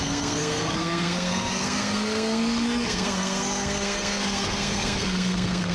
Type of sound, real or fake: fake